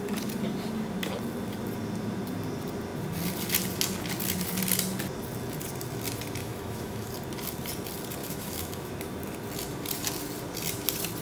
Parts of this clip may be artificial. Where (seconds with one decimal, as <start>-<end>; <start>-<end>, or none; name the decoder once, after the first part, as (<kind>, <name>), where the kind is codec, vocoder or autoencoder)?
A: 6.4-7.1 (autoencoder, DAC-VAE); 8.2-8.9